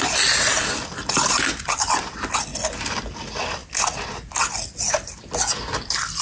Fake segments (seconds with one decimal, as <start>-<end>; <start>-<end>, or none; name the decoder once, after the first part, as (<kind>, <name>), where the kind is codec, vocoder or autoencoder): none